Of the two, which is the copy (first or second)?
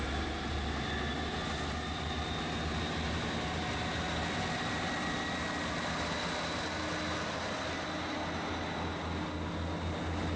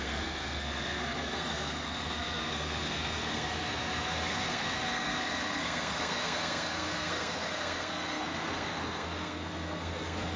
second